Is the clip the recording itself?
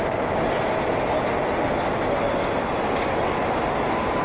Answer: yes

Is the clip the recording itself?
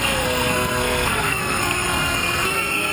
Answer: no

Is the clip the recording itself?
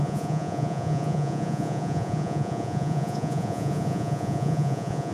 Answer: no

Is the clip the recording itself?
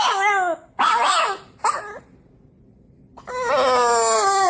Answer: yes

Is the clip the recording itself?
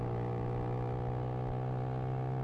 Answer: yes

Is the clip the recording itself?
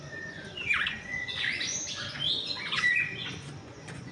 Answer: no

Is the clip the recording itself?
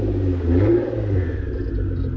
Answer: yes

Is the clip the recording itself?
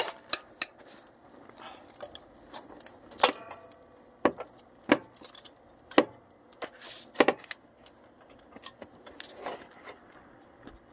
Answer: yes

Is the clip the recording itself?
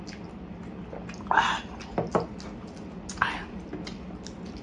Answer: yes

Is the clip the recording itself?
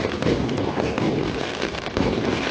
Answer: no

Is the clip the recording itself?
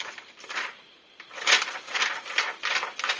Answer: yes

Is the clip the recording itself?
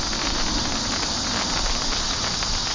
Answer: yes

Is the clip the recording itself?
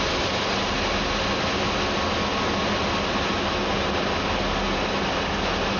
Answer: yes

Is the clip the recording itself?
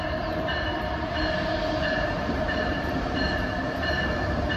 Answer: no